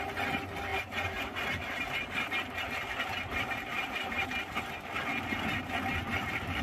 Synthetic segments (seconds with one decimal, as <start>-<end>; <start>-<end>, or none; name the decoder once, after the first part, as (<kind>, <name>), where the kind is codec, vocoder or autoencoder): 0.7-4.7 (vocoder, BigVGAN v2)